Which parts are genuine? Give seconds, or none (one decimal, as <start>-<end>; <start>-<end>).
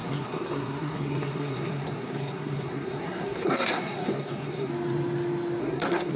4.7-5.6